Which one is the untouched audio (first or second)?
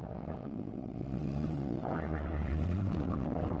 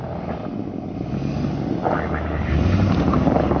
second